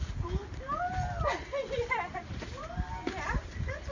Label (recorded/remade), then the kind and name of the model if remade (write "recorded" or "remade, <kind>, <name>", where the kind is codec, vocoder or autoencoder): recorded